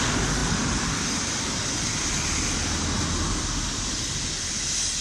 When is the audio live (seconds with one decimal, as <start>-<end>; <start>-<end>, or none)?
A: 0.0-5.0